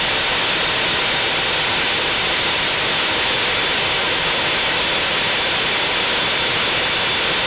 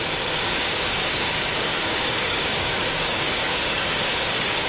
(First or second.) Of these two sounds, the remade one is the second